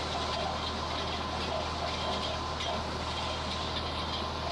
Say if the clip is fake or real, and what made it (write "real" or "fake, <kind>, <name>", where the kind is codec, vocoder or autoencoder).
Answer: real